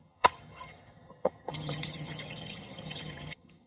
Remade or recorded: remade